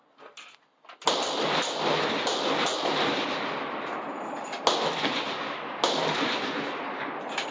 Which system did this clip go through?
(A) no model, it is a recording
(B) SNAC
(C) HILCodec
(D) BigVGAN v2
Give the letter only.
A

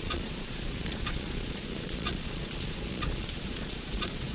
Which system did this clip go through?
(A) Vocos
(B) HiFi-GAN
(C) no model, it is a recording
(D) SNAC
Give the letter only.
A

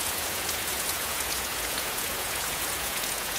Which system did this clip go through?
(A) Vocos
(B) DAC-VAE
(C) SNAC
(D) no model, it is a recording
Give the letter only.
A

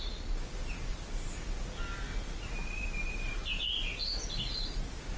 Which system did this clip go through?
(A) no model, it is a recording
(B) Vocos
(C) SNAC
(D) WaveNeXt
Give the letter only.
A